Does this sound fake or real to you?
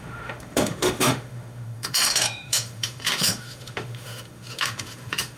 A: fake